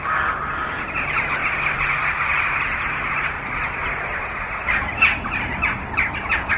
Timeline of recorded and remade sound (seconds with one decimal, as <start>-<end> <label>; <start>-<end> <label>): 0.0-6.6 recorded